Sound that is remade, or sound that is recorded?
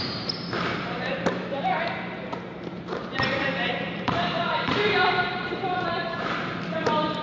remade